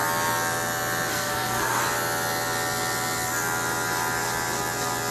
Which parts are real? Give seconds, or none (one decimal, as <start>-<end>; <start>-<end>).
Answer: 0.0-1.1; 1.8-5.1